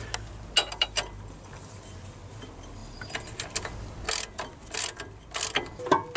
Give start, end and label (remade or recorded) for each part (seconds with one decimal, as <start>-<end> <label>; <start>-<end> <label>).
0.0-6.2 recorded